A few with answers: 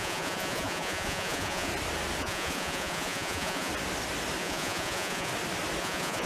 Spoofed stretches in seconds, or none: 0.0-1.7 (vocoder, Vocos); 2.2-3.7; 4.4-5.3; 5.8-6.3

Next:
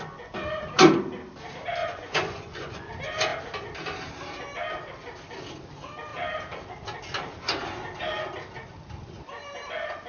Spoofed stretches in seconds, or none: 1.8-2.9 (vocoder, Vocos)

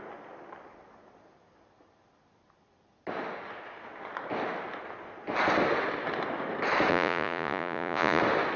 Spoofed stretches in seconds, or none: 6.9-8.2 (vocoder, Vocos)

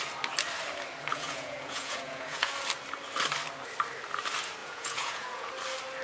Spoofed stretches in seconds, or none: 1.1-2.5 (vocoder, Vocos); 4.6-5.5

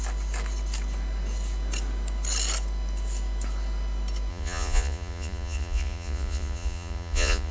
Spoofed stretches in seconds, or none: 4.3-7.5 (vocoder, Vocos)

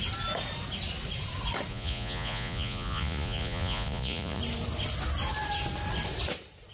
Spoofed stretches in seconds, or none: 1.7-4.4 (vocoder, Vocos)